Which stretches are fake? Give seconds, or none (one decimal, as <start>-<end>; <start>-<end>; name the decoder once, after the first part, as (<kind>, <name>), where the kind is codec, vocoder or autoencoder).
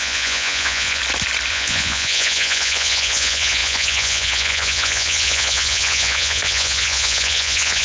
0.0-1.0 (vocoder, Vocos); 1.5-7.8